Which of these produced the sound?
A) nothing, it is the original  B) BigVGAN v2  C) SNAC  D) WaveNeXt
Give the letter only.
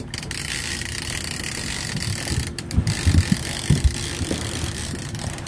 B